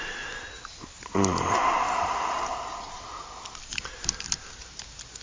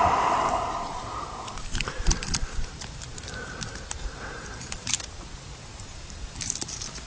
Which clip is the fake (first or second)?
second